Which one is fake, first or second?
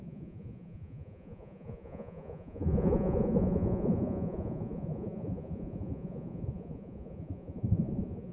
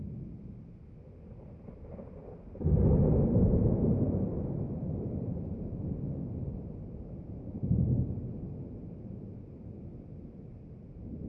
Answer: first